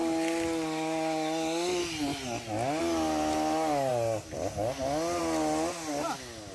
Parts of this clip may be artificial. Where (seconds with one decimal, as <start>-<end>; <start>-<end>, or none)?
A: none